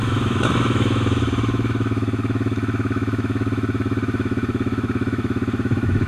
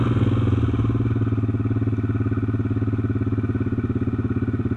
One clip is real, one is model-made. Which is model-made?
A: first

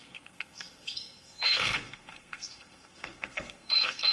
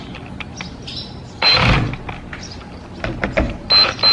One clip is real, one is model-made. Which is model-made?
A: first